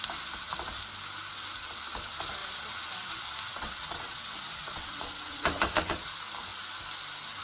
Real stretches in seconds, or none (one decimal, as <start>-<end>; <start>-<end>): 0.0-3.5; 6.0-7.4